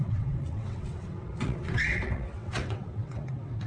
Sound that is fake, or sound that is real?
fake